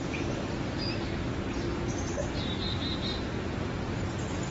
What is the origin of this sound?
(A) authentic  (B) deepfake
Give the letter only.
A